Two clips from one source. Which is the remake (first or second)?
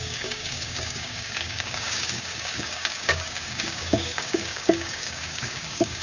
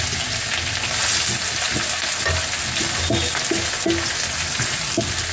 first